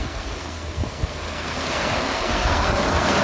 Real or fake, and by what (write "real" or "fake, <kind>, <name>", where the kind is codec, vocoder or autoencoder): fake, codec, SNAC